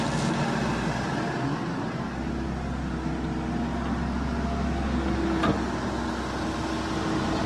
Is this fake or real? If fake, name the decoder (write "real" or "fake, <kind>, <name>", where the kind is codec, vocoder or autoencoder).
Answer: real